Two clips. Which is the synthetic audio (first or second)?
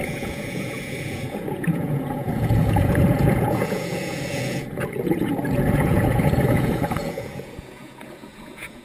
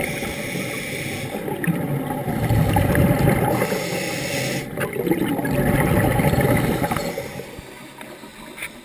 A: first